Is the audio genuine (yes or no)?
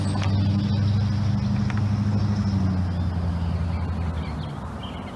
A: yes